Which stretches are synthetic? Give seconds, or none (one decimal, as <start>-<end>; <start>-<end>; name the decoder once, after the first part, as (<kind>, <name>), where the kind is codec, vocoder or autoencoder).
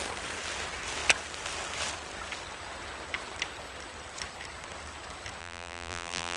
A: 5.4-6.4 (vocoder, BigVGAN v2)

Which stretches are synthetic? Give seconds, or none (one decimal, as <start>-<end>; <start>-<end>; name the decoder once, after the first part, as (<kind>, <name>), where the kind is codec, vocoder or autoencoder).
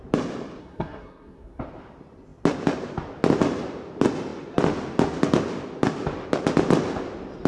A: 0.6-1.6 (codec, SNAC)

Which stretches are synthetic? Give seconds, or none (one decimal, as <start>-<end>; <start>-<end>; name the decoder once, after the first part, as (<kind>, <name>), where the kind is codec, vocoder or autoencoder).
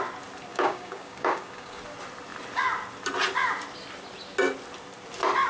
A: 0.5-1.8 (codec, DAC)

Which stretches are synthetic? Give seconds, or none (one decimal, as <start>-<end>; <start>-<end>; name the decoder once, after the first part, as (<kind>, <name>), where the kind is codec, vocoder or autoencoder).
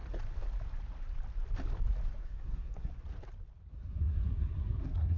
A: 2.2-2.9 (codec, SNAC); 3.7-5.2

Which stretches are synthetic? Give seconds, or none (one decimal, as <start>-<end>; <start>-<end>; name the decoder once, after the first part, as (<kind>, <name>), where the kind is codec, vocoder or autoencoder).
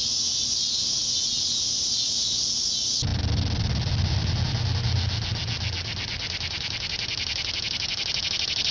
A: none